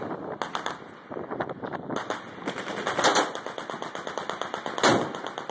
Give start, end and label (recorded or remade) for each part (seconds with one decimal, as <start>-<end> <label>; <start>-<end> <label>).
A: 0.0-5.5 recorded